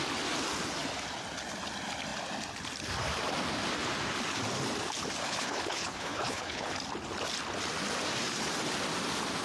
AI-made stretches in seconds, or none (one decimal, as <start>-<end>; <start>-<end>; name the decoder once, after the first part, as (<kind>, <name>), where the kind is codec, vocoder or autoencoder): 5.2-6.7 (codec, HILCodec)